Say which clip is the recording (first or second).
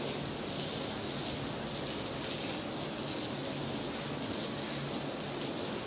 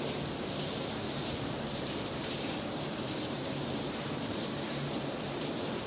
first